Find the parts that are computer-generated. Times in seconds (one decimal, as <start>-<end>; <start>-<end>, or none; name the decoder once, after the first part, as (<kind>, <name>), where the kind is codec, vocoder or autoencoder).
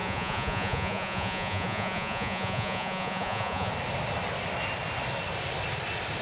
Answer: 0.0-3.7 (vocoder, Vocos)